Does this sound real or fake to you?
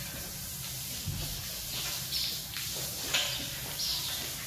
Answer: real